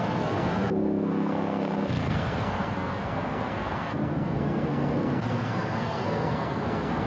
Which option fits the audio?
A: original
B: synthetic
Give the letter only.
B